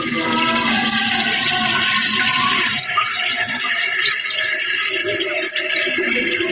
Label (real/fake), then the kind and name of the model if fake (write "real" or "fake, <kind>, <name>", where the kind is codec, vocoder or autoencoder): fake, vocoder, BigVGAN v2